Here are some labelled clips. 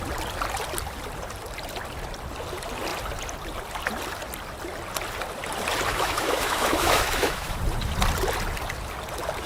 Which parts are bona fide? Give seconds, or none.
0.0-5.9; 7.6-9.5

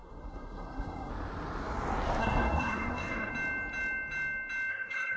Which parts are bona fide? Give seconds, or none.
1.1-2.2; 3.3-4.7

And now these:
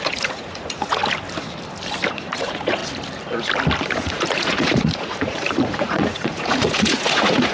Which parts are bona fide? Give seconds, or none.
1.0-2.1; 2.8-3.9